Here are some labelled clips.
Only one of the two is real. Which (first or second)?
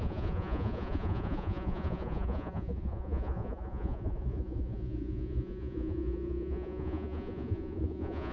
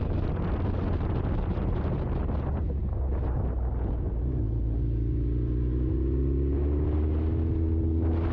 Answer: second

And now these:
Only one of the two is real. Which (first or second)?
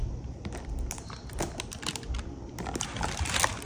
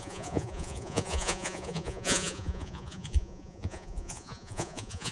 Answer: first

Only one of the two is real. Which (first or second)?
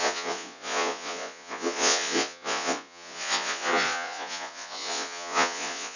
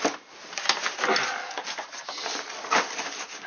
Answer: second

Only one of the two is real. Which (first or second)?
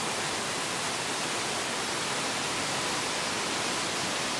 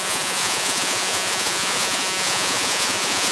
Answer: first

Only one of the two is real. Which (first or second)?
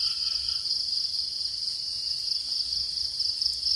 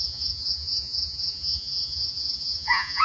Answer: first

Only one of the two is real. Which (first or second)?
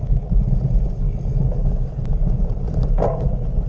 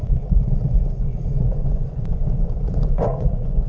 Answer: first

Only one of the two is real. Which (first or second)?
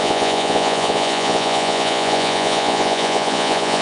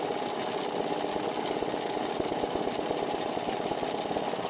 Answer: second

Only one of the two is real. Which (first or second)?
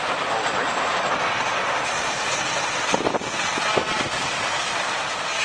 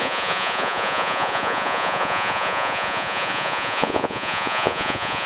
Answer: first